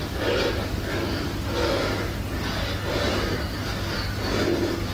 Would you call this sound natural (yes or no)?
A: yes